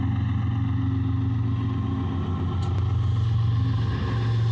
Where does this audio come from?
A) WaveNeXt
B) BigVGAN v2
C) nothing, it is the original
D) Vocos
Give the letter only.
C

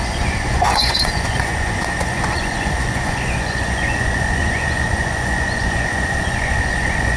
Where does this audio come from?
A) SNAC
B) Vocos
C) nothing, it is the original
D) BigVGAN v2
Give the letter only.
B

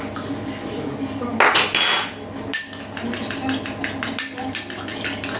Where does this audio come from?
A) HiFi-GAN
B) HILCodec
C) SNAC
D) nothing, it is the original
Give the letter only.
D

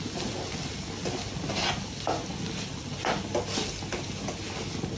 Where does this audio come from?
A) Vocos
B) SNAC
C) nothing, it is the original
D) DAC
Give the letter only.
C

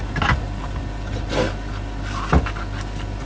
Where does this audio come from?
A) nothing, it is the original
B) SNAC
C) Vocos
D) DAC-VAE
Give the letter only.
A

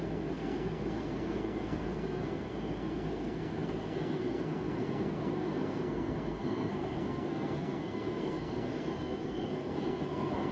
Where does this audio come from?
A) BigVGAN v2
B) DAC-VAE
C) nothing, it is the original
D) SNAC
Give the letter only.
D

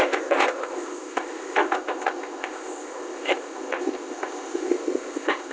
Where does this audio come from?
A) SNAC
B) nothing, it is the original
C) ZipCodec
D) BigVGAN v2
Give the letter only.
C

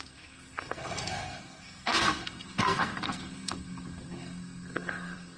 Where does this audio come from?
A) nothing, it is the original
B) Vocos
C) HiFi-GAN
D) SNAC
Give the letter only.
D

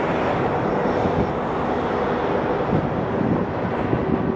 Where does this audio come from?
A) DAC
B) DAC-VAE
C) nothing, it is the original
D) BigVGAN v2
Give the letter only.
C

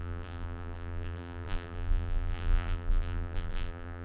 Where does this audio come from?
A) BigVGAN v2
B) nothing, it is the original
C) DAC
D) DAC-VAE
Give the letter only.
A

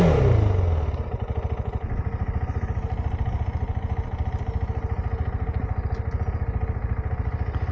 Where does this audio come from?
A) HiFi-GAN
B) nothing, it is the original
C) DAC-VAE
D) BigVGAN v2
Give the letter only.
B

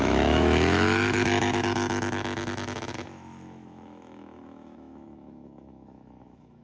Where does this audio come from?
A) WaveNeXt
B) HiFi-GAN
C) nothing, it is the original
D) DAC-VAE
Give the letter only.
D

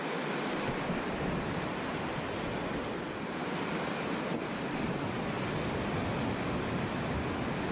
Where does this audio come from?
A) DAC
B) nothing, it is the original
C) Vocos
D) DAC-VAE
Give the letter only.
B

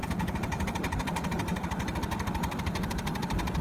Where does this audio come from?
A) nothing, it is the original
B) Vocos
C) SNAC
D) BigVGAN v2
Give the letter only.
D